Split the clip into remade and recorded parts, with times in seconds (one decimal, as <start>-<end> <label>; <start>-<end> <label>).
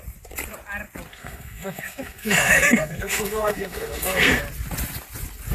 0.0-1.1 recorded; 1.1-4.4 remade; 4.4-5.5 recorded